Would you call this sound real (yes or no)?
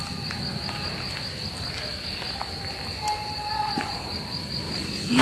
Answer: yes